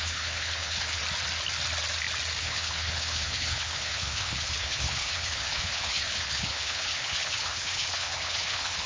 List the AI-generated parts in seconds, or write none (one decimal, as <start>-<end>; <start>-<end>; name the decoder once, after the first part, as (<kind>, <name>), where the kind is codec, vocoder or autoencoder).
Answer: 0.0-1.0 (codec, HILCodec); 2.4-8.9